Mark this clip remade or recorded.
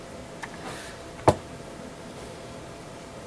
remade